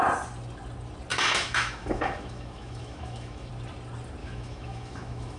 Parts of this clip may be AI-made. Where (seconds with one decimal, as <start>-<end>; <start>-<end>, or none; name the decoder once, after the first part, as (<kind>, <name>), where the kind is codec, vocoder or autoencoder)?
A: 1.1-3.5 (autoencoder, DAC-VAE); 4.2-5.4